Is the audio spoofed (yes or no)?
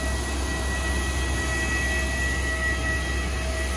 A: no